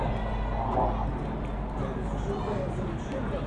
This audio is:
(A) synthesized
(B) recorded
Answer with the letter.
B